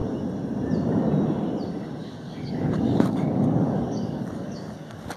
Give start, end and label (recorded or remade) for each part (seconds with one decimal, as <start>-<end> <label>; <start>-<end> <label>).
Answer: 0.0-2.0 recorded; 2.0-5.2 remade